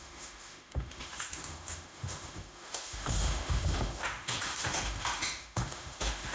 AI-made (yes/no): yes